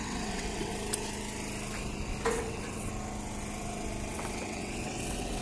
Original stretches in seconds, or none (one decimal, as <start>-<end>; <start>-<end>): 0.7-2.3; 2.9-4.1